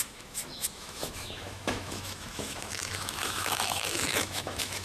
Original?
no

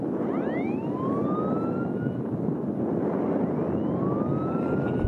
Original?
yes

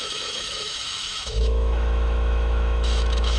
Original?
no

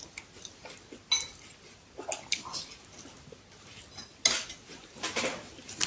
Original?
yes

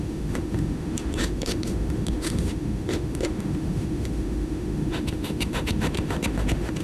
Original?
no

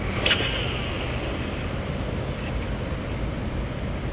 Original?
yes